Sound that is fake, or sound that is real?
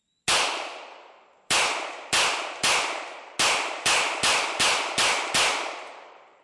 real